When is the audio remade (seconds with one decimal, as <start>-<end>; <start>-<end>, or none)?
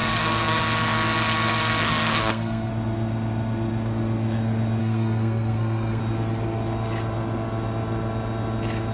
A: 0.0-0.6; 1.8-2.7; 4.8-6.0